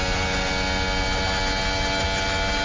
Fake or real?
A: real